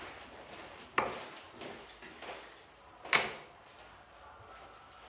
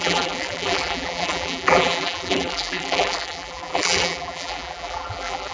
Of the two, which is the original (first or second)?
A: first